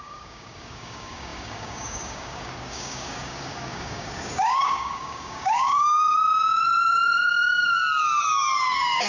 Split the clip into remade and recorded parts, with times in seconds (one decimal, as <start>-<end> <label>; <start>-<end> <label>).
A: 0.0-6.7 remade; 6.7-7.3 recorded; 7.3-9.1 remade